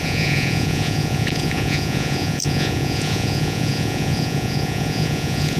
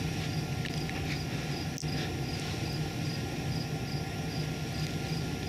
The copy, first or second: first